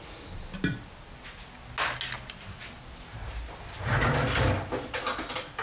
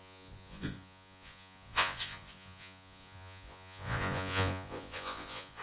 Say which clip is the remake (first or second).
second